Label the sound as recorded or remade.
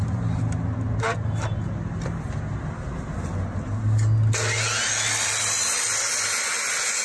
recorded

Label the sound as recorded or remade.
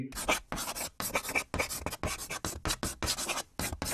recorded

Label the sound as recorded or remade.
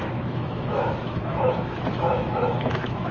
remade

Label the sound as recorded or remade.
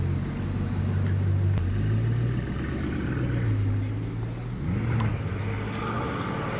recorded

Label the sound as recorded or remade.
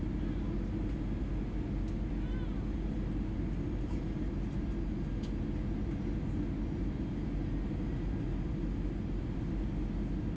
recorded